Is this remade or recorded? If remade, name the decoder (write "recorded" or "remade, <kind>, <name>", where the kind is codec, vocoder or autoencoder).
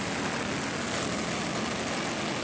recorded